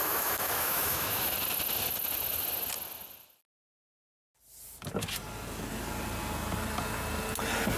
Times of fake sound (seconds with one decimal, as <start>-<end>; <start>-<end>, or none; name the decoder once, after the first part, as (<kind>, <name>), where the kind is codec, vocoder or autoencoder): 0.0-1.3 (autoencoder, DAC-VAE)